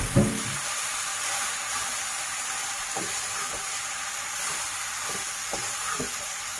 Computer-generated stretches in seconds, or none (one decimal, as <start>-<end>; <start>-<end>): 0.0-1.1; 4.0-6.6